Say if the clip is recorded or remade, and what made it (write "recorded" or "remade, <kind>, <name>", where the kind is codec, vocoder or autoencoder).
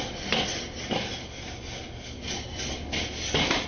recorded